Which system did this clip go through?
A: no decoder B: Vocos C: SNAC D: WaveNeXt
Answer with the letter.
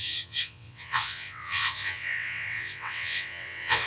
D